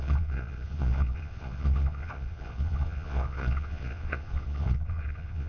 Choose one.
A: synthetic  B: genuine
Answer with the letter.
A